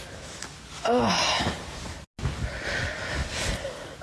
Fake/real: real